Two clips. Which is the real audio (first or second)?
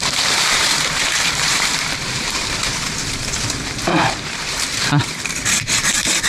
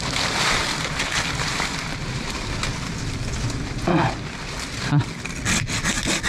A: second